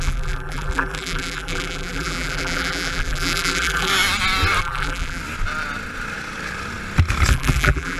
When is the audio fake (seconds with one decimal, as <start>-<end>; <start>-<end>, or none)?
0.0-3.9; 4.6-5.2; 7.3-8.0